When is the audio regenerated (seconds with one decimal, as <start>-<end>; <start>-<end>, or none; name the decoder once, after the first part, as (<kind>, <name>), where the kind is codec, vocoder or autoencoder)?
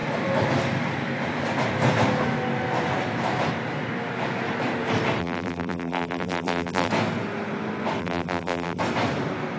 5.2-6.9 (vocoder, BigVGAN v2); 8.0-8.8